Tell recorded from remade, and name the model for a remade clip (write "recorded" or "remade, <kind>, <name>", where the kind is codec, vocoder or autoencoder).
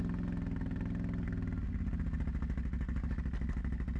recorded